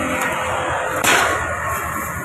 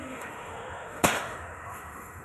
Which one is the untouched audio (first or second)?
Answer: first